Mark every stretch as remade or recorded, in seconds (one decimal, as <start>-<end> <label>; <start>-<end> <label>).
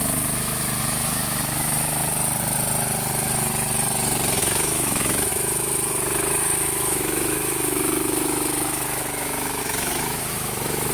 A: 0.0-2.0 remade; 2.0-4.4 recorded; 4.4-10.9 remade